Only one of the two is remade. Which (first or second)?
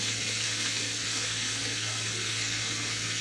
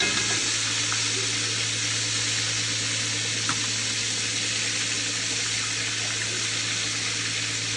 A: first